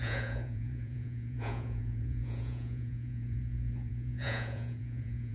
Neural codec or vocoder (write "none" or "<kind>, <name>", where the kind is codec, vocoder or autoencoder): vocoder, Vocos